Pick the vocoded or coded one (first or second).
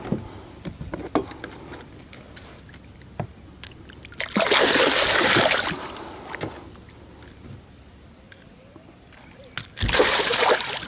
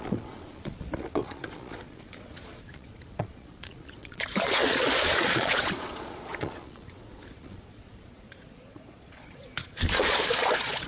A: second